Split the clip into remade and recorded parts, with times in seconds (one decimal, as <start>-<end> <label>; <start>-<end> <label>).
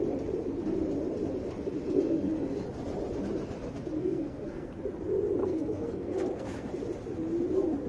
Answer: 0.0-4.0 recorded; 4.0-4.8 remade; 4.8-5.4 recorded; 5.4-6.7 remade; 6.7-7.9 recorded